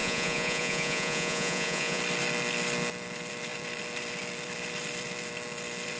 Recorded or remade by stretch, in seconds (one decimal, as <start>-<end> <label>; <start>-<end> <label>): 0.0-2.0 remade; 2.0-6.0 recorded